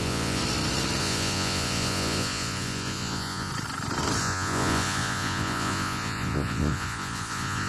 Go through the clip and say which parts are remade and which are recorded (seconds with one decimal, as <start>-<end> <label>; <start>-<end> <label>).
0.0-0.4 remade; 0.4-1.0 recorded; 1.0-3.5 remade; 3.5-4.2 recorded; 4.2-7.7 remade

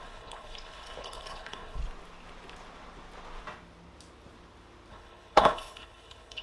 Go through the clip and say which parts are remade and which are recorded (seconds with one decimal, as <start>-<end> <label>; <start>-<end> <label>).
0.0-1.8 remade; 1.8-4.9 recorded; 4.9-6.4 remade